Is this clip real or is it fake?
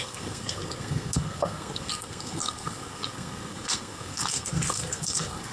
fake